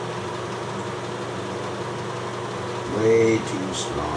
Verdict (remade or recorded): recorded